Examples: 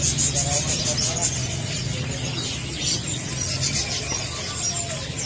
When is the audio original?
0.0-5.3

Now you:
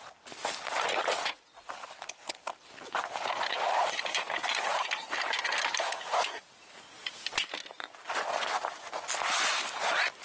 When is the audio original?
0.0-10.2

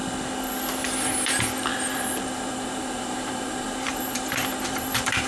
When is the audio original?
0.0-1.7

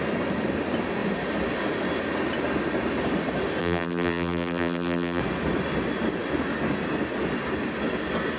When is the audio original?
0.0-3.6; 5.2-8.4